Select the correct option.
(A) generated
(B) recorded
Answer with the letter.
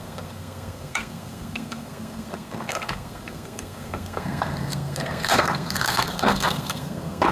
A